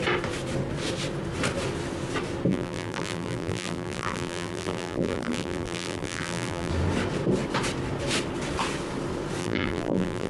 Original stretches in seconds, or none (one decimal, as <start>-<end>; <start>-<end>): 0.0-2.5; 6.7-9.4